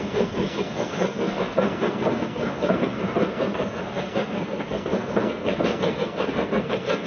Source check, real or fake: fake